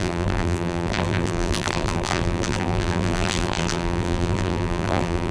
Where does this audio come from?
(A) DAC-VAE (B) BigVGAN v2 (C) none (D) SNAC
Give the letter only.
B